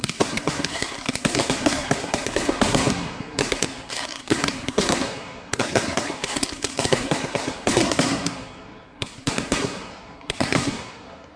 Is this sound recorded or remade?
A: remade